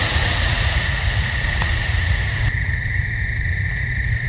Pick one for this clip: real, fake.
fake